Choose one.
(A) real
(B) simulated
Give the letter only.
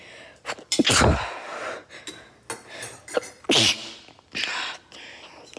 A